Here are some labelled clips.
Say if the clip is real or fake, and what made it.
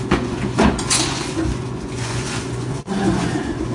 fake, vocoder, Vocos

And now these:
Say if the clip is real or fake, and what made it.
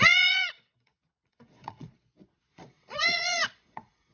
fake, vocoder, Vocos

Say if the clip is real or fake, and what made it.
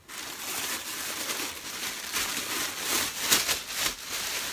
real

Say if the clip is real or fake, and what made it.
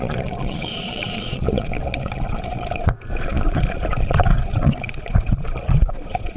fake, vocoder, Vocos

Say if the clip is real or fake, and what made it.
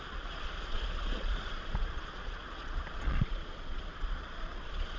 fake, vocoder, Vocos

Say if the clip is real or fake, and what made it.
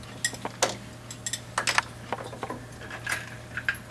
real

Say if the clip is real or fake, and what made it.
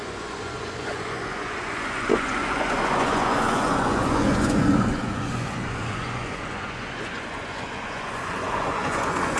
fake, vocoder, Vocos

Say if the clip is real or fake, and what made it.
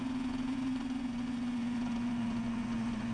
fake, vocoder, Vocos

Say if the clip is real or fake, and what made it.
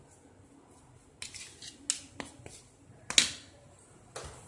real